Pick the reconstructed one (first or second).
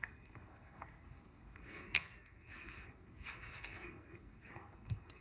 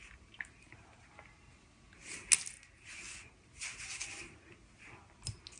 first